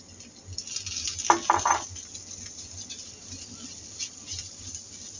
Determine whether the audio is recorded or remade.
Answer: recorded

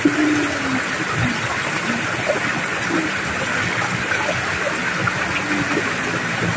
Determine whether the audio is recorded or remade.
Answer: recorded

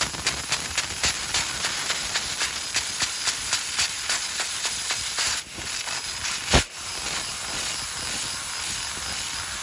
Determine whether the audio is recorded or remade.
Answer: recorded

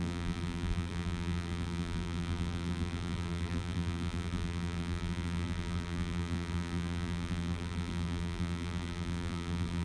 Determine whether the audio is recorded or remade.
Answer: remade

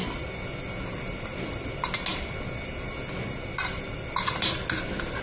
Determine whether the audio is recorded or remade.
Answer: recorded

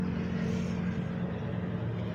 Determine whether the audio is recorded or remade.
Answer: recorded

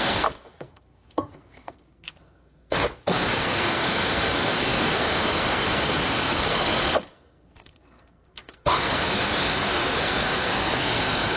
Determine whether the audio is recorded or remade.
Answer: remade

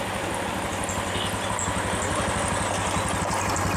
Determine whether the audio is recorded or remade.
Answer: recorded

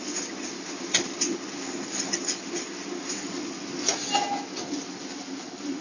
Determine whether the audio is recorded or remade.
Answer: recorded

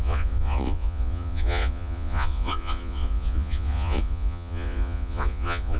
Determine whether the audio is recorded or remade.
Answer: remade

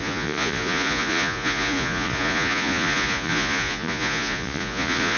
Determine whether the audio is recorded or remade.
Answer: remade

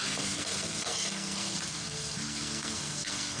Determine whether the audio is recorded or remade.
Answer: remade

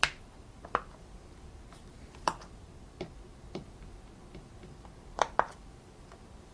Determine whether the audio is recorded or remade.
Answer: remade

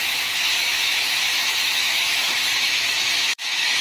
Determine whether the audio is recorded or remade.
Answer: remade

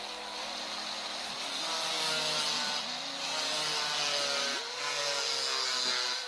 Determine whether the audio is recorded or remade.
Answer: recorded